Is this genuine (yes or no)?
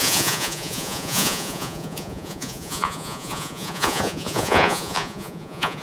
no